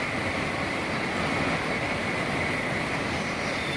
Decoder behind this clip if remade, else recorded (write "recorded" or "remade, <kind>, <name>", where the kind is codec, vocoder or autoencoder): recorded